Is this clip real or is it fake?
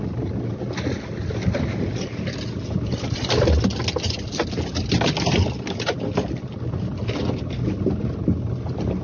real